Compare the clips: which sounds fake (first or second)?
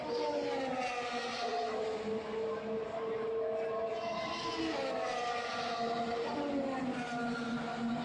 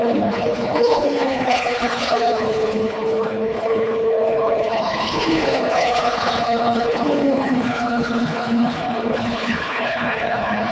second